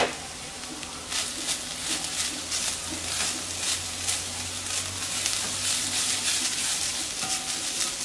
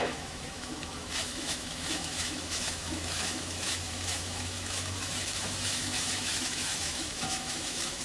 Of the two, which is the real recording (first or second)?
first